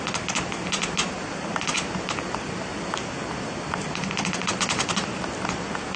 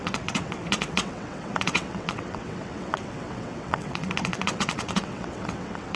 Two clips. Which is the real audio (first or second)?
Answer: first